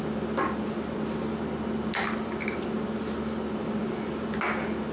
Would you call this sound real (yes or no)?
yes